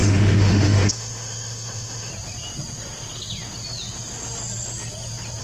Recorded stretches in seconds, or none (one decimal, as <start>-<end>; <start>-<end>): 2.1-5.4